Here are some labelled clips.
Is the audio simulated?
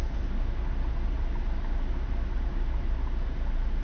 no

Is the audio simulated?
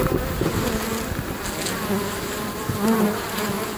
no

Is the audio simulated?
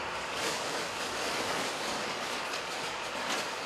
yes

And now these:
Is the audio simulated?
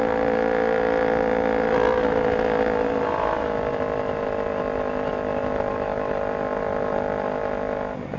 no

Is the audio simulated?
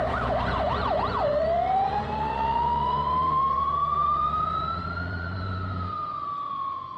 yes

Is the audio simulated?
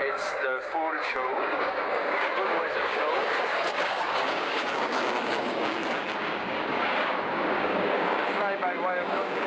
yes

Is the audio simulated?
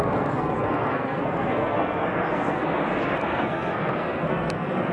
yes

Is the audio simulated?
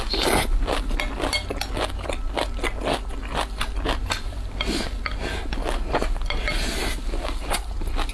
no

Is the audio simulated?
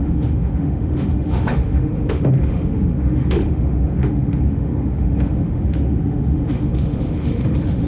yes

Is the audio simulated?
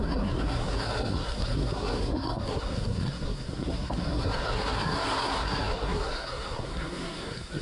yes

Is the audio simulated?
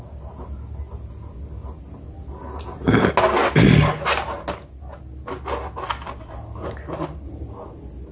no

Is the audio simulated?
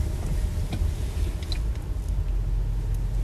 no